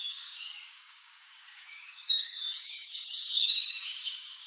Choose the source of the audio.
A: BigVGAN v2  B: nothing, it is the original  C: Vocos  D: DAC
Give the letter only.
D